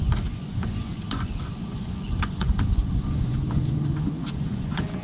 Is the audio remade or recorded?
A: remade